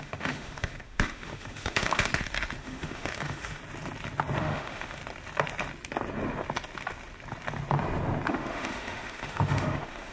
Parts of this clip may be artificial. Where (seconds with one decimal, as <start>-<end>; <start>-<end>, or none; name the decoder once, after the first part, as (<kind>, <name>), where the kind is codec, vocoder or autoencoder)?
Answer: 0.0-2.1 (autoencoder, DAC-VAE); 2.6-3.6; 4.4-5.0; 8.3-10.1